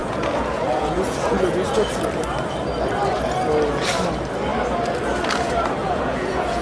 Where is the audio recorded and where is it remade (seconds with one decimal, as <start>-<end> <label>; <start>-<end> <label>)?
0.0-2.0 remade; 2.0-5.8 recorded; 5.8-6.6 remade